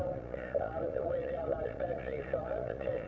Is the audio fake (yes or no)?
yes